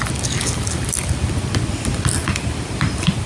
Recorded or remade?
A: recorded